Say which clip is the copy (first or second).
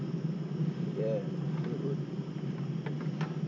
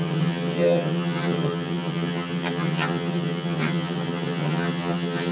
second